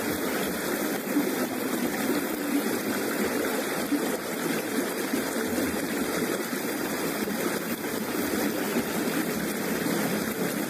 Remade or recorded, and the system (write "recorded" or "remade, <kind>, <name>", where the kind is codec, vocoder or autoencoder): remade, vocoder, BigVGAN v2